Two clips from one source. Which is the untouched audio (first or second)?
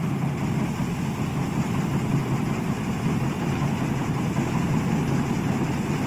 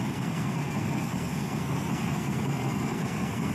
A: first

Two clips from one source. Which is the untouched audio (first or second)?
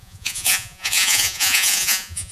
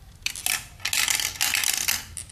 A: second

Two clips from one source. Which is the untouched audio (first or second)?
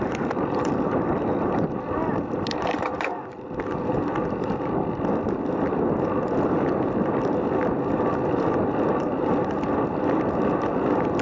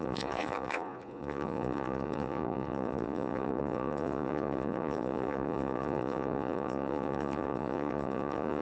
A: first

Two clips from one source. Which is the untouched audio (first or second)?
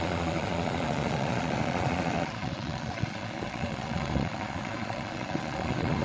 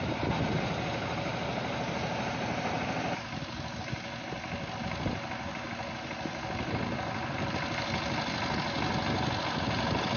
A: second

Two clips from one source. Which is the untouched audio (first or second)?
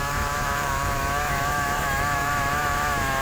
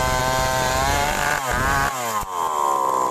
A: second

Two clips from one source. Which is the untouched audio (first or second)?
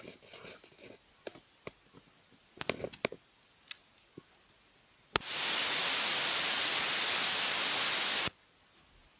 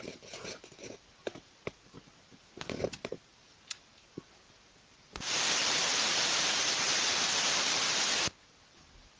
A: first